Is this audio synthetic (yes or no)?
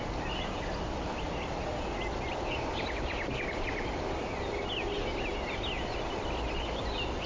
no